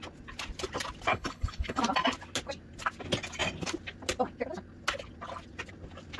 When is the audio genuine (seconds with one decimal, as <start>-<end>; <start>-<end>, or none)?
0.0-1.1; 1.8-6.2